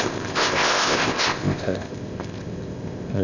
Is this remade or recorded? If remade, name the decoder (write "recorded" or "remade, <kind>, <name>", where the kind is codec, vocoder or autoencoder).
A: remade, codec, ZipCodec